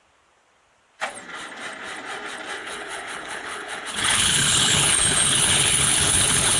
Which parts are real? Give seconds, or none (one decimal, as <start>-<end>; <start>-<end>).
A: 0.0-2.6